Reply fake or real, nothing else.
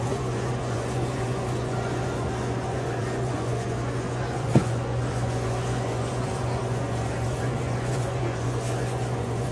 fake